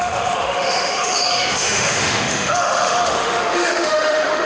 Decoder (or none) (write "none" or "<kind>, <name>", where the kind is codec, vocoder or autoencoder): autoencoder, DAC-VAE